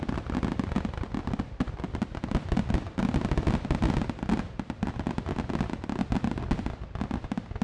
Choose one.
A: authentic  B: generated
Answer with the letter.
A